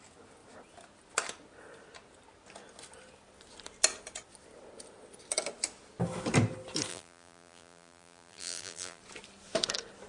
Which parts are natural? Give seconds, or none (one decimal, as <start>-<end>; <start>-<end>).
0.0-6.9; 9.0-10.1